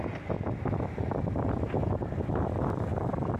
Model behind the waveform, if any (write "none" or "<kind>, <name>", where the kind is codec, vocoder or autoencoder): none